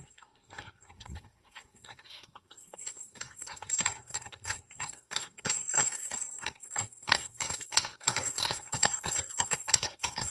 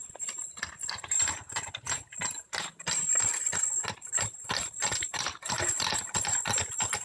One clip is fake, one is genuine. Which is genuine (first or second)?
second